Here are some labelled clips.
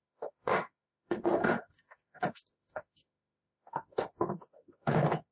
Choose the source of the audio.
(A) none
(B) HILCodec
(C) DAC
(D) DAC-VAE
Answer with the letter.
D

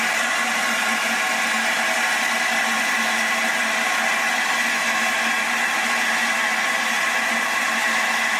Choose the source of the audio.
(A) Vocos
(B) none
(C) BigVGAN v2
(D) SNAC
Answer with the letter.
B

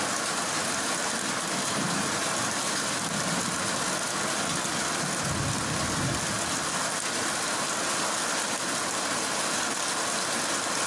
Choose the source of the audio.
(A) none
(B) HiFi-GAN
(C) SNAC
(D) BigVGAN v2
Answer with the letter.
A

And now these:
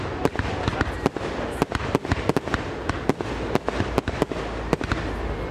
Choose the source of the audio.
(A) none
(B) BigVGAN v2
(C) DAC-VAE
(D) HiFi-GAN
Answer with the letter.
A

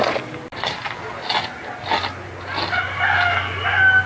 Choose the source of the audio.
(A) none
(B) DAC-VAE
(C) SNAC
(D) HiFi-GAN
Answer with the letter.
A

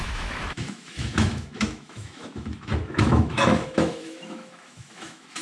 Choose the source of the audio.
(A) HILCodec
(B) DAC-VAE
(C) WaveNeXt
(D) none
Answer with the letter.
B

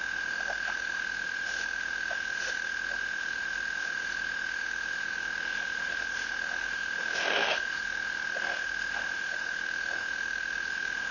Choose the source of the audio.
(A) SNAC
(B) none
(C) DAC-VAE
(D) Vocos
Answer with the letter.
C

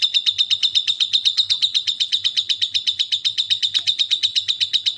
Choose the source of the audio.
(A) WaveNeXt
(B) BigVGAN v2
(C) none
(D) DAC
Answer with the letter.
C